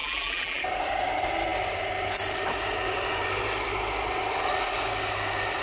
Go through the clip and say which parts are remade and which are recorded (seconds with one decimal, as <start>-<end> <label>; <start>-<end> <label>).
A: 0.0-0.6 remade; 0.6-5.6 recorded